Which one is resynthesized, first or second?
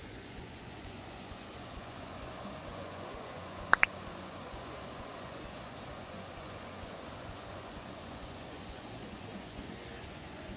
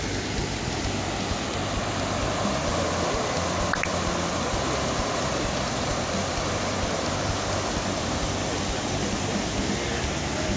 first